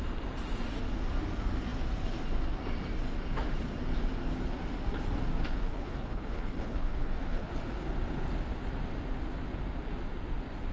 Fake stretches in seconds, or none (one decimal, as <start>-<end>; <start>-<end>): 5.4-7.5